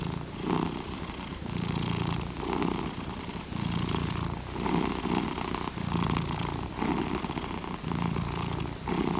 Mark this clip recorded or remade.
recorded